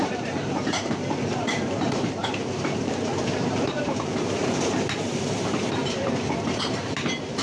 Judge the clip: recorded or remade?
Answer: remade